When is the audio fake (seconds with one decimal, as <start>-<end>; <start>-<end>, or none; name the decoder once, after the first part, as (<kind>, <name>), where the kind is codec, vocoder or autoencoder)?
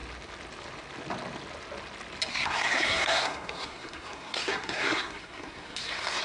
2.3-6.2 (codec, SNAC)